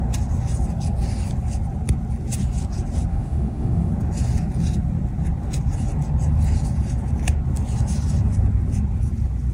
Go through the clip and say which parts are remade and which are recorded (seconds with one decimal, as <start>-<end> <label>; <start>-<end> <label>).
0.0-3.1 recorded; 3.1-3.9 remade; 3.9-9.5 recorded